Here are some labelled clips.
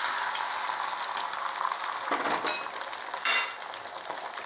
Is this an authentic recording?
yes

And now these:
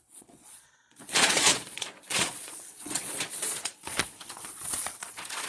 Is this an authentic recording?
no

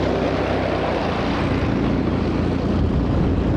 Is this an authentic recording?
yes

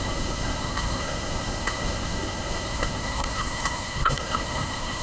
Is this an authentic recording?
no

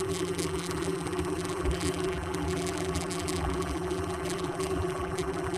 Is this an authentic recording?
no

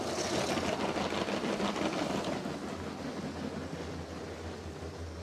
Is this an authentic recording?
yes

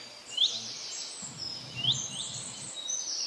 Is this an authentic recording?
yes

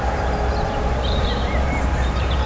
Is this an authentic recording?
no